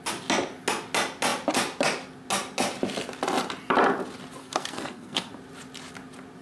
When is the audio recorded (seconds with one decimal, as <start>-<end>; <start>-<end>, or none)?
0.0-4.4; 5.3-6.4